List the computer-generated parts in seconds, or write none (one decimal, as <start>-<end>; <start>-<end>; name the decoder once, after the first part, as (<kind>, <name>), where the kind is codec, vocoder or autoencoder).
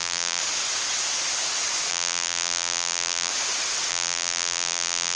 0.0-0.4 (vocoder, BigVGAN v2); 1.9-3.3; 3.9-5.2